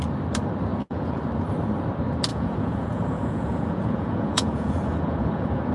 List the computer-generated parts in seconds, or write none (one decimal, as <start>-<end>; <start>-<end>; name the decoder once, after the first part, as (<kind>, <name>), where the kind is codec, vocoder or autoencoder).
0.7-1.2 (vocoder, Vocos); 2.3-5.7